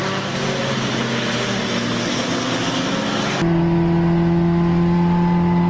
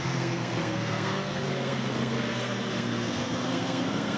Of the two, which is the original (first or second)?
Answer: first